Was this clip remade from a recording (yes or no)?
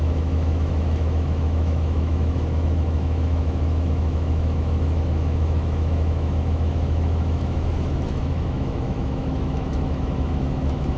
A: yes